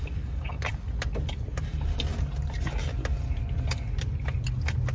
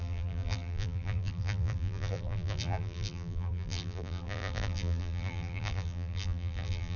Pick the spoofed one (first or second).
second